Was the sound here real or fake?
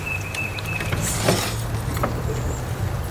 fake